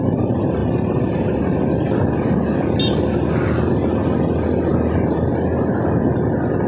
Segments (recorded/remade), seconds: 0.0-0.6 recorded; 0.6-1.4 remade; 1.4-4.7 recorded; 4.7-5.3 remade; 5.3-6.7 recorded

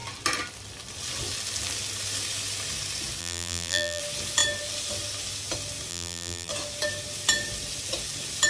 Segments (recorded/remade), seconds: 0.0-3.2 recorded; 3.2-4.0 remade; 4.0-5.9 recorded; 5.9-6.5 remade; 6.5-8.5 recorded

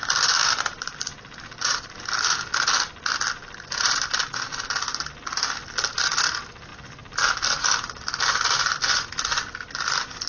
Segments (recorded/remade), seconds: 0.0-0.4 recorded; 0.4-2.0 remade; 2.0-10.3 recorded

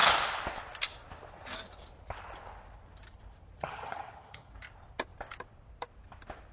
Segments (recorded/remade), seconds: 0.0-3.6 recorded; 3.6-4.5 remade; 4.5-6.5 recorded

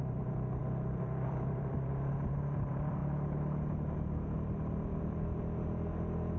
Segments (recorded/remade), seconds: 0.0-3.0 remade; 3.0-6.4 recorded

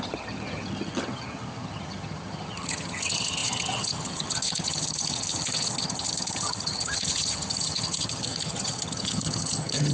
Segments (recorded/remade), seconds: 0.0-9.9 remade

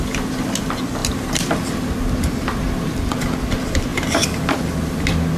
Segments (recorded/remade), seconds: 0.0-5.4 recorded